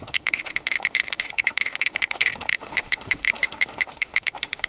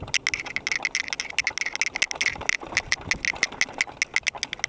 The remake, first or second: first